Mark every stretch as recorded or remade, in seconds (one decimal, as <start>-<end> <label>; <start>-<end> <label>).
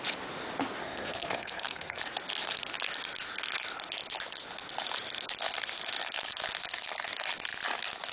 0.0-0.8 recorded; 0.8-2.0 remade; 2.0-8.1 recorded